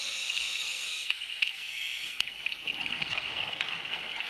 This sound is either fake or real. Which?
fake